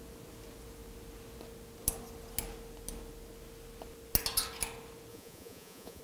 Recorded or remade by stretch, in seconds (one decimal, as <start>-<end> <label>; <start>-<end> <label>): 0.0-5.1 recorded; 5.1-6.0 remade